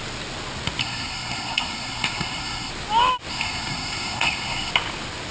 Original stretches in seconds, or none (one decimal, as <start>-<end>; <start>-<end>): 0.0-0.8; 2.7-3.3; 4.7-5.3